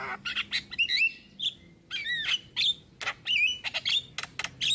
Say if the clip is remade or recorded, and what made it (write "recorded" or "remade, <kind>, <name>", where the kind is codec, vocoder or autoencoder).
recorded